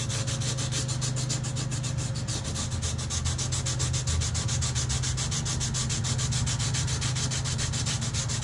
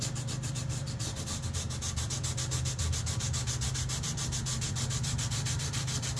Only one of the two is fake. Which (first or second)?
second